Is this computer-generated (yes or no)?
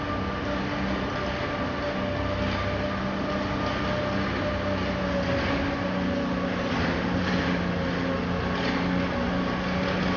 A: no